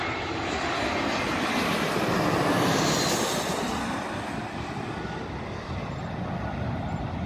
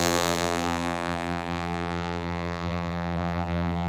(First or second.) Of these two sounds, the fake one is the second